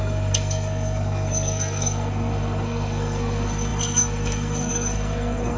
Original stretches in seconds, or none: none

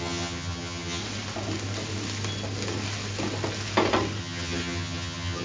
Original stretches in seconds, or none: 1.0-4.2

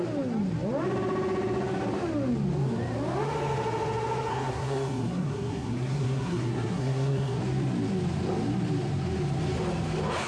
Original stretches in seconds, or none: 0.0-4.3; 7.4-10.3

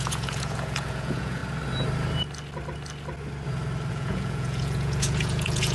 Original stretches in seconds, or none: 1.4-3.9

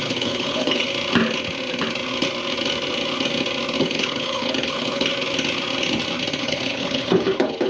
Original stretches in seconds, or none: 0.9-3.8; 5.1-6.4